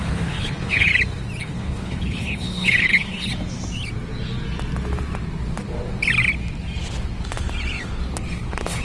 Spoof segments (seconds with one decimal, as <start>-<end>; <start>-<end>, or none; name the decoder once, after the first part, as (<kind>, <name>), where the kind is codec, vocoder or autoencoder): 0.0-0.9 (codec, HILCodec); 1.4-3.3; 8.3-8.8